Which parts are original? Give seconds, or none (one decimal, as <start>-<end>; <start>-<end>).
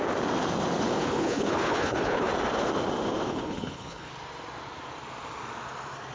0.0-1.0; 2.3-3.3; 4.1-6.1